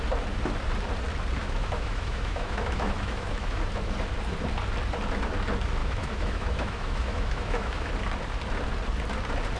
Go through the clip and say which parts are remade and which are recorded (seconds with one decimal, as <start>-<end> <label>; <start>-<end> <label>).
0.0-1.4 recorded; 1.4-3.6 remade; 3.6-5.8 recorded; 5.8-7.9 remade; 7.9-9.6 recorded